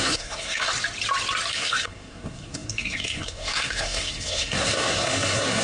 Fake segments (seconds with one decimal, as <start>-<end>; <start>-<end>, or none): 0.0-0.7; 1.5-5.6